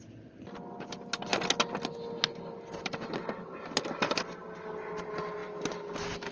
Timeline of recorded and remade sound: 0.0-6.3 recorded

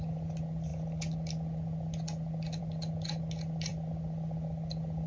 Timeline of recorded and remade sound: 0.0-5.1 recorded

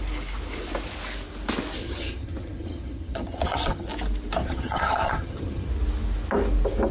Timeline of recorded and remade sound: 0.0-1.8 recorded; 1.8-3.9 remade; 3.9-4.4 recorded; 4.4-5.7 remade; 5.7-6.9 recorded